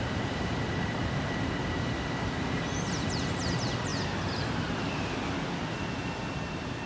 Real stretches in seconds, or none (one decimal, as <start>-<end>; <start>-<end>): 3.9-6.5